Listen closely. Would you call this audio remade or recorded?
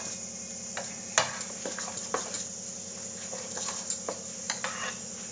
recorded